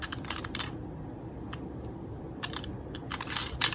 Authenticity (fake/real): real